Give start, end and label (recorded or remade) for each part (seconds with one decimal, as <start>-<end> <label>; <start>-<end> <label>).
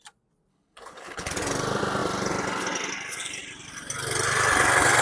0.0-0.5 recorded; 0.5-1.3 remade; 1.3-5.0 recorded